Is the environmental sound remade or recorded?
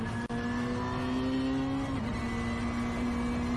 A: recorded